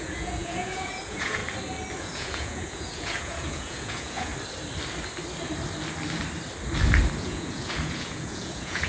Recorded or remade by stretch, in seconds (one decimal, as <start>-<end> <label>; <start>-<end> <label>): 0.0-1.4 remade; 1.4-2.0 recorded; 2.0-4.3 remade; 4.3-7.2 recorded; 7.2-8.9 remade